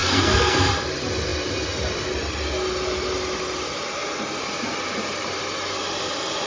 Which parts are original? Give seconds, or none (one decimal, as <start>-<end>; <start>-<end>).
0.7-6.5